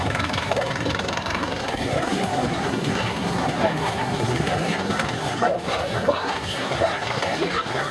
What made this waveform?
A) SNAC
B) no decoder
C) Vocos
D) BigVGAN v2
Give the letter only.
A